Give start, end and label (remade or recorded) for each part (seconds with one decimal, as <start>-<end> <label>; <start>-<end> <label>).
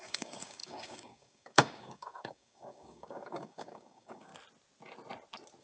0.0-4.3 remade; 4.3-5.6 recorded